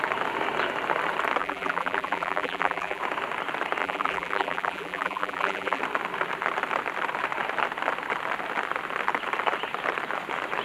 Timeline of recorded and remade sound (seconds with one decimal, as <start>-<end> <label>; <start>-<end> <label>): 0.0-1.4 recorded; 1.4-3.0 remade; 3.0-3.8 recorded; 3.8-5.8 remade; 5.8-10.6 recorded